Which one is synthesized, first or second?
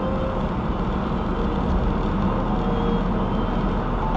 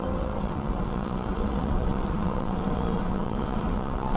second